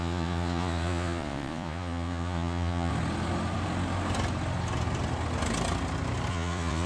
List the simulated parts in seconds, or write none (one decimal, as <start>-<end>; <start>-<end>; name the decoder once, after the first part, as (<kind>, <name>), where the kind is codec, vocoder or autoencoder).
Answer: 0.0-2.9 (vocoder, Vocos); 6.3-6.9